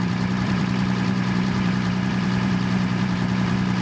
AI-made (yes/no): yes